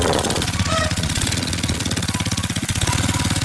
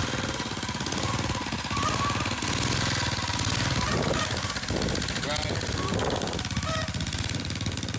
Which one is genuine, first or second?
second